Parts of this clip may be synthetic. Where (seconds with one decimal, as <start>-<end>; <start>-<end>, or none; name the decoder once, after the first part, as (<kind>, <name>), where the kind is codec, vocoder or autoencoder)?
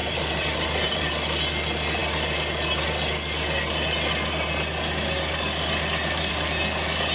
0.0-1.0 (vocoder, BigVGAN v2)